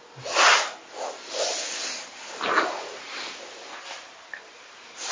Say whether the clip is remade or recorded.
recorded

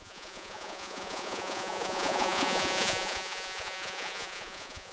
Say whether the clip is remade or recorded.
remade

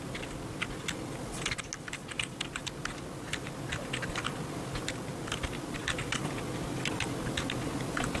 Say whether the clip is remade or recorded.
recorded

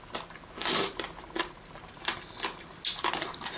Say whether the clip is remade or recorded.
recorded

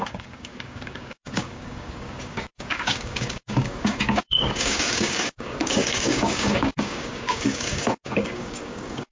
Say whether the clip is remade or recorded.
remade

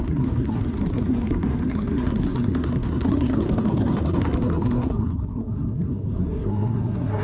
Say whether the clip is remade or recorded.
remade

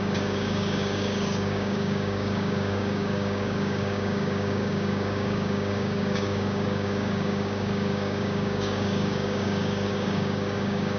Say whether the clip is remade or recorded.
remade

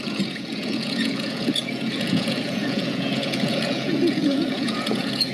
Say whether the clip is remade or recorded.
remade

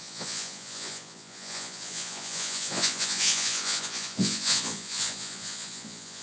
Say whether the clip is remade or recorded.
remade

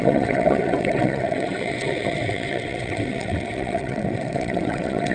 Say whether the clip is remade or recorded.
remade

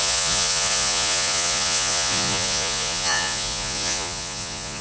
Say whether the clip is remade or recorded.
remade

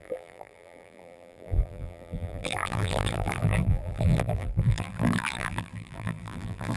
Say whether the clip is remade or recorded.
remade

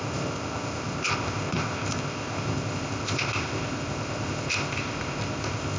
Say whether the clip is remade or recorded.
remade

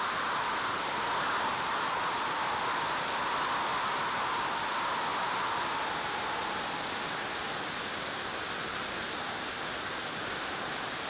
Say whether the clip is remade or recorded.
recorded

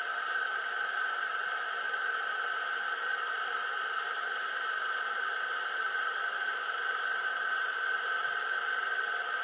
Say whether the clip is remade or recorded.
recorded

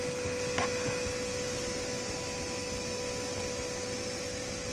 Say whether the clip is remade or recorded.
recorded